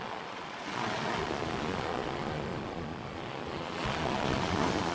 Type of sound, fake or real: fake